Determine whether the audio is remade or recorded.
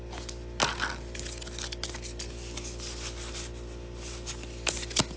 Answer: recorded